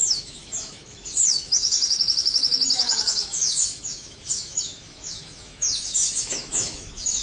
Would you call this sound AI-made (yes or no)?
yes